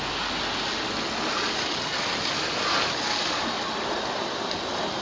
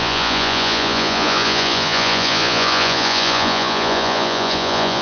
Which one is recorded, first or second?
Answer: first